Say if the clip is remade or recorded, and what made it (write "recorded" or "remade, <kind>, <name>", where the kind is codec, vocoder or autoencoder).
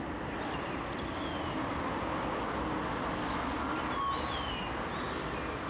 recorded